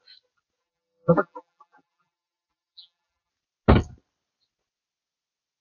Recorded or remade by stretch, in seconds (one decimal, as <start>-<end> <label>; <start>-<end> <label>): 0.0-0.6 recorded; 0.6-3.3 remade; 3.3-5.6 recorded